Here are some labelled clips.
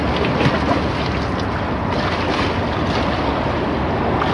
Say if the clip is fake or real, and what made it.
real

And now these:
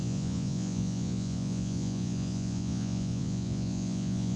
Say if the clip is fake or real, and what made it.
fake, vocoder, Vocos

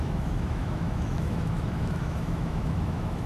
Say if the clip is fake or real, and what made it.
fake, autoencoder, DAC-VAE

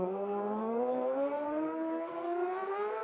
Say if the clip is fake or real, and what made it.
fake, codec, SNAC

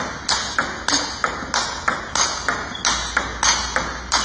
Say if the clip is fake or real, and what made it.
real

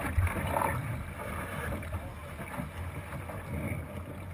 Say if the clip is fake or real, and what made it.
real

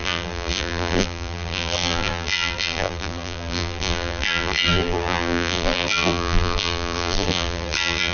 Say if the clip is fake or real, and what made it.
fake, vocoder, BigVGAN v2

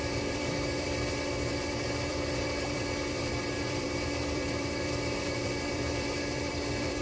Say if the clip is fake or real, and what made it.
fake, vocoder, BigVGAN v2